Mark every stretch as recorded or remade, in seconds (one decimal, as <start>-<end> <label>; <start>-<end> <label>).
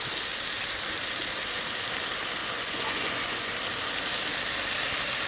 0.0-2.4 recorded; 2.4-3.5 remade; 3.5-5.3 recorded